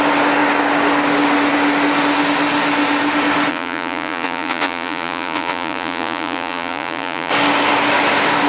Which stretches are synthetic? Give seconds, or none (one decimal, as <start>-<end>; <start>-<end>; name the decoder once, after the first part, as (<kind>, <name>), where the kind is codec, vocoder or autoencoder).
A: 3.5-7.3 (vocoder, Vocos)